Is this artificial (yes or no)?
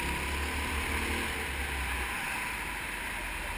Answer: no